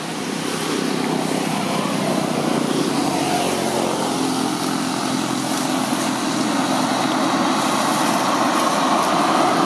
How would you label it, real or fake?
real